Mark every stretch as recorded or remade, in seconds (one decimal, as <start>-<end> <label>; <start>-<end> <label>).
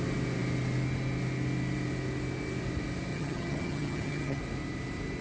0.0-3.1 recorded; 3.1-4.4 remade; 4.4-5.2 recorded